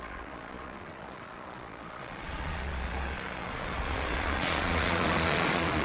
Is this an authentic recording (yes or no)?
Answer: no